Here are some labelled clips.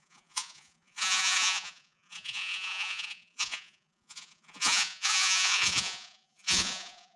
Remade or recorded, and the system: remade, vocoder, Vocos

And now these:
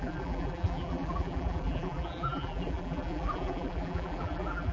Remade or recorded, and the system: remade, vocoder, BigVGAN v2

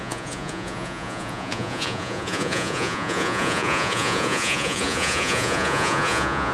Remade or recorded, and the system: remade, vocoder, Vocos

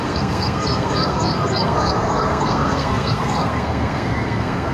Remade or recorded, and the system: remade, codec, SNAC